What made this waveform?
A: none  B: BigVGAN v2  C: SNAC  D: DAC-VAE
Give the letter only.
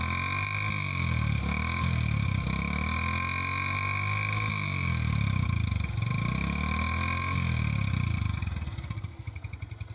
A